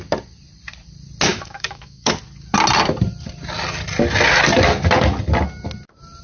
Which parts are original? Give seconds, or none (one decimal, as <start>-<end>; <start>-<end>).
0.0-1.3; 2.1-6.2